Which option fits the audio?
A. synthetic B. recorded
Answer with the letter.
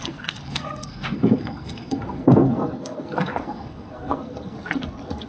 A